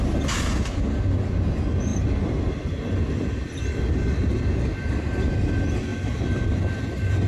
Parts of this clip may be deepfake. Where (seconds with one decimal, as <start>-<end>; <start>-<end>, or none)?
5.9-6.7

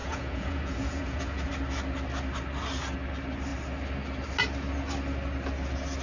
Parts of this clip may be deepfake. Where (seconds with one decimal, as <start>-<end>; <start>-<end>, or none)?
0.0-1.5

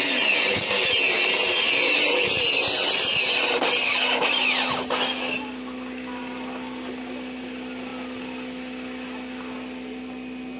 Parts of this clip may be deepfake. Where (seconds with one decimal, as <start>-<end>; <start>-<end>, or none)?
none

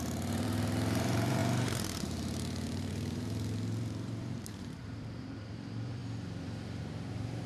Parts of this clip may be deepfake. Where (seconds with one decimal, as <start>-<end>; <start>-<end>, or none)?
0.0-6.0; 6.8-7.5

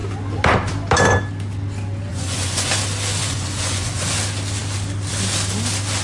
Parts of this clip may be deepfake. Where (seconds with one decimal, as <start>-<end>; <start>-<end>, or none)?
2.1-2.7; 3.2-4.1